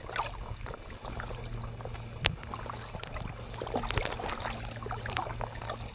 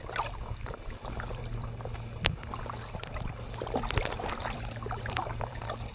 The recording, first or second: first